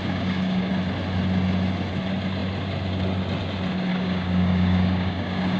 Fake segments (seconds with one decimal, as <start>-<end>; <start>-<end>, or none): 0.0-0.7; 3.9-5.6